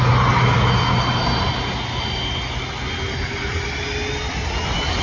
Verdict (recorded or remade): recorded